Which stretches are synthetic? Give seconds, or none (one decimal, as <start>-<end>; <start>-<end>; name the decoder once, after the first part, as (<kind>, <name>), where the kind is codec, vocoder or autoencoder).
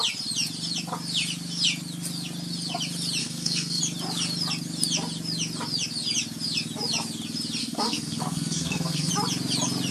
3.2-3.8 (codec, SNAC); 7.6-9.1